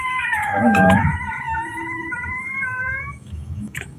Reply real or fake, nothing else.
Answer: fake